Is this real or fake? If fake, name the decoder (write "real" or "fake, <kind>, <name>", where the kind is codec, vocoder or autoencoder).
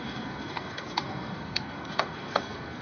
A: fake, codec, SNAC